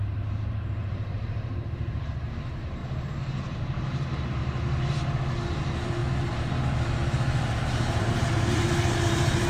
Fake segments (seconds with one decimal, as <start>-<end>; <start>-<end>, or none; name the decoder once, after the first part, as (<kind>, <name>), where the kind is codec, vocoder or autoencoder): 0.0-2.8 (vocoder, BigVGAN v2); 3.6-4.4; 5.6-6.0; 7.7-9.5